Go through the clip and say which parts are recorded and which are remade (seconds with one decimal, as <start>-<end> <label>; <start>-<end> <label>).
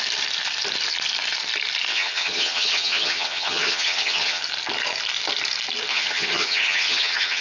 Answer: 0.0-1.9 recorded; 1.9-4.4 remade; 4.4-5.9 recorded; 5.9-7.4 remade